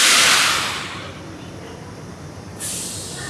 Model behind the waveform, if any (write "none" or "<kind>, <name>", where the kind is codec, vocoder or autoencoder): none